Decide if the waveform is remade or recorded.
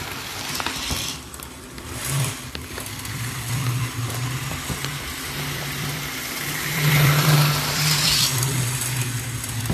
remade